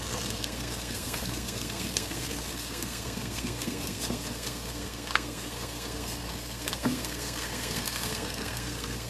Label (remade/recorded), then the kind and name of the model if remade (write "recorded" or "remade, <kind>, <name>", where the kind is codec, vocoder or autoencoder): remade, codec, SNAC